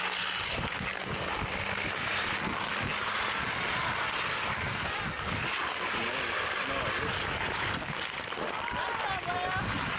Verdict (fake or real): real